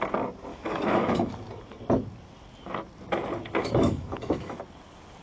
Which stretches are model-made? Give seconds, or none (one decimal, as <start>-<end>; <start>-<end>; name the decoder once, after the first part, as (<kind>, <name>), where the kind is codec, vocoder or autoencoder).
0.5-1.3 (autoencoder, DAC-VAE); 3.6-4.6